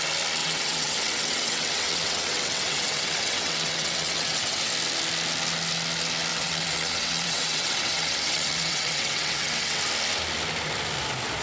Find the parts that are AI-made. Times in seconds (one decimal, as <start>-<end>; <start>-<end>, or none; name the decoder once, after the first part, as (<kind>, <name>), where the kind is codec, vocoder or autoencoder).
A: 0.4-4.7 (vocoder, WaveNeXt); 6.3-9.8